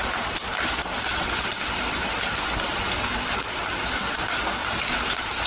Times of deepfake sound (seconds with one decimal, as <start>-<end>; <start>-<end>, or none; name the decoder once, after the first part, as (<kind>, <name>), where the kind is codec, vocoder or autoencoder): 0.0-0.7 (vocoder, BigVGAN v2); 4.6-5.5